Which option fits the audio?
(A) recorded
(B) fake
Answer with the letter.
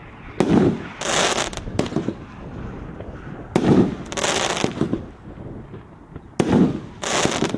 A